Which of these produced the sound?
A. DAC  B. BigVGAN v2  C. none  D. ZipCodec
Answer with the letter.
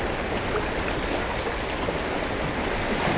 C